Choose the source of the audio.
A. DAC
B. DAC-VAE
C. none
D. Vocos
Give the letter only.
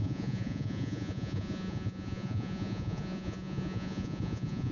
D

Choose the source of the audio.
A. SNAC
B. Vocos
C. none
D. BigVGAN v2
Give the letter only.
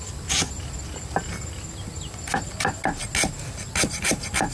C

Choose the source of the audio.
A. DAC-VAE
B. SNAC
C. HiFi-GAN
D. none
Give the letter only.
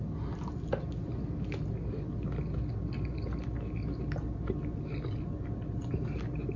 D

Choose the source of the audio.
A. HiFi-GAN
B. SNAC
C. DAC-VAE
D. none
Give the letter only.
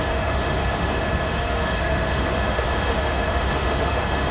C